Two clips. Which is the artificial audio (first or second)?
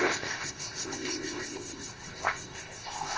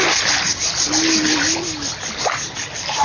first